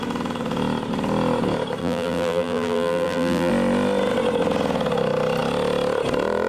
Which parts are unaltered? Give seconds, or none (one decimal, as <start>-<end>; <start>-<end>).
0.0-1.8; 3.5-6.5